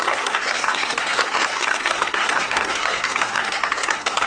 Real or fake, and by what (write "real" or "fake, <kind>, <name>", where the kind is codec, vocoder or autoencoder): fake, codec, SNAC